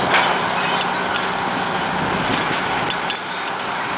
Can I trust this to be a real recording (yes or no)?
yes